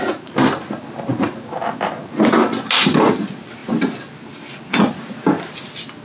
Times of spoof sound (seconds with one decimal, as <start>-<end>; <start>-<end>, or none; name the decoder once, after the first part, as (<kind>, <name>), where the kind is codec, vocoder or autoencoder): none